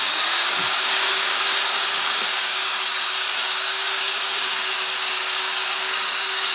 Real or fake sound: fake